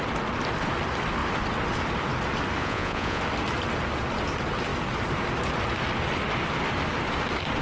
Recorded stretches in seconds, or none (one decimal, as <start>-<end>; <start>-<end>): 0.0-2.6; 3.2-7.6